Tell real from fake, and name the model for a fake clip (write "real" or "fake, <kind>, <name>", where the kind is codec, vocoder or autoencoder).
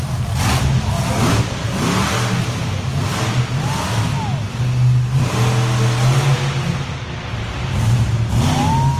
real